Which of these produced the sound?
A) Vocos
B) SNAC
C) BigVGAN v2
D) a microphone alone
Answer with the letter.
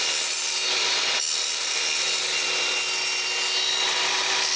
D